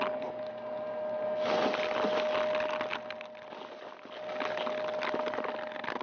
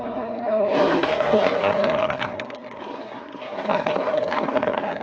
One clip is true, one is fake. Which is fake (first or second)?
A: second